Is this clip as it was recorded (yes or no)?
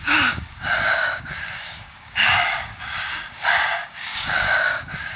no